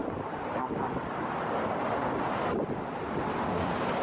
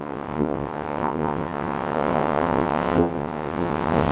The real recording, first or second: first